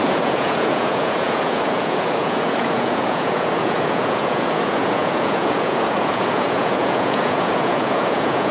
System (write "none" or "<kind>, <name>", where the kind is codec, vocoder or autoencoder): vocoder, Vocos